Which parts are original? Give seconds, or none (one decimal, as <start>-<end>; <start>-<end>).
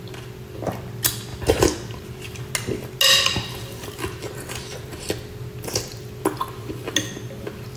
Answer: 0.0-7.8